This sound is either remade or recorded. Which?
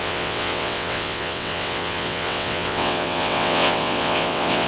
remade